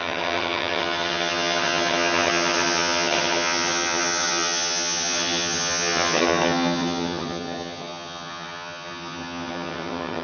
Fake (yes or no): yes